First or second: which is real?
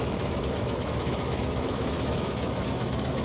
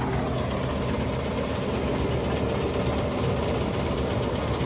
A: second